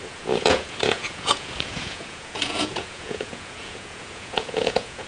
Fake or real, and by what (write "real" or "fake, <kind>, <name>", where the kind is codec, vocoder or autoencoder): fake, vocoder, Vocos